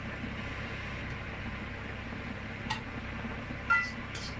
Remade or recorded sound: recorded